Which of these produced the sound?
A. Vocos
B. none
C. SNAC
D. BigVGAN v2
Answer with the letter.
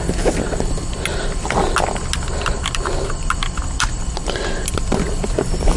B